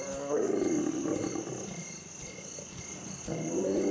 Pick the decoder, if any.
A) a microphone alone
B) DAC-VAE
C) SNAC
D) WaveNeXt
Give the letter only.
A